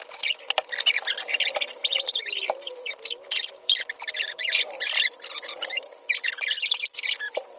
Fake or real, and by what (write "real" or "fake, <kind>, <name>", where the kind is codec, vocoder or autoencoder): fake, vocoder, BigVGAN v2